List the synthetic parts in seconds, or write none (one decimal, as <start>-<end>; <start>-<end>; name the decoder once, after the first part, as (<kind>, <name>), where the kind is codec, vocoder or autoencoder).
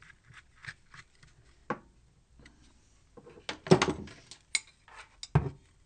none